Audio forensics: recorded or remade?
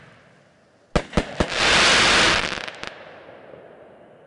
recorded